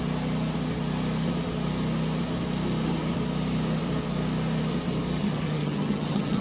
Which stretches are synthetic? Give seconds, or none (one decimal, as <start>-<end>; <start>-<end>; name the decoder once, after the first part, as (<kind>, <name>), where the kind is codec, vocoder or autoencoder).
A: 5.2-6.4 (vocoder, HiFi-GAN)